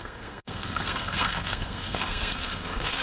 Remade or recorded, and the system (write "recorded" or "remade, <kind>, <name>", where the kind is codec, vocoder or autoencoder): remade, codec, SNAC